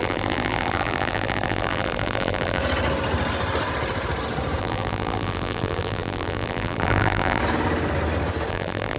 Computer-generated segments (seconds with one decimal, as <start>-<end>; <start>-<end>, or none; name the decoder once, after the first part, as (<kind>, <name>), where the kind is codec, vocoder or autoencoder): 0.0-2.6 (vocoder, BigVGAN v2); 4.6-7.4; 8.5-9.0

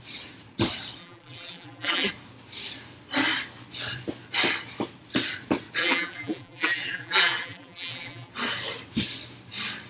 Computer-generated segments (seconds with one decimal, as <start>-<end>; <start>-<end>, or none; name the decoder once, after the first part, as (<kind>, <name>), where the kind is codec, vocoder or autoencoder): 1.0-2.1 (vocoder, BigVGAN v2); 5.8-8.3

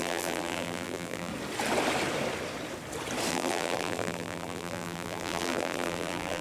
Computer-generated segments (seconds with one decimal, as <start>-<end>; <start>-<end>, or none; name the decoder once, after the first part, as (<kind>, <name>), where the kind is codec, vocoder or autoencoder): 0.0-1.3 (vocoder, BigVGAN v2); 3.3-6.4

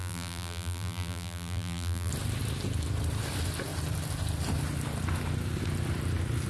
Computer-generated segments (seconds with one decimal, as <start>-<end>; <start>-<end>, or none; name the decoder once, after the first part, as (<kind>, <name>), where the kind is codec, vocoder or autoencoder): 0.0-2.1 (vocoder, BigVGAN v2)

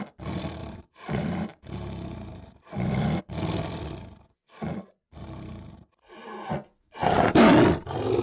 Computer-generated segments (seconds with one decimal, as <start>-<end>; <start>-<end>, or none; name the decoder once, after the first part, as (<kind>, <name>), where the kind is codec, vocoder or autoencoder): 0.6-3.2 (vocoder, BigVGAN v2); 5.0-6.0

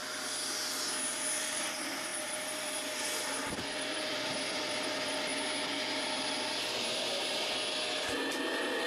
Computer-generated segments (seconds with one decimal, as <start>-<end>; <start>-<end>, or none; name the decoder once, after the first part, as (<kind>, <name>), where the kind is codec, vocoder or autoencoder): 1.4-5.3 (vocoder, BigVGAN v2); 8.0-8.9